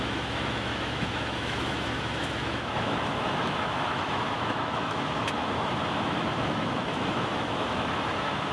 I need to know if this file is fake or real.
fake